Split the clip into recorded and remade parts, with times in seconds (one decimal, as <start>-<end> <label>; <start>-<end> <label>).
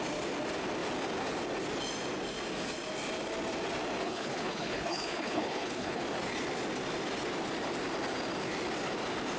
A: 0.0-4.0 recorded; 4.0-6.0 remade; 6.0-9.4 recorded